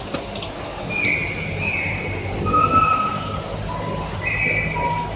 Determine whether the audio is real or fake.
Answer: real